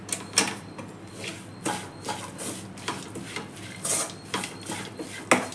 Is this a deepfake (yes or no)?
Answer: no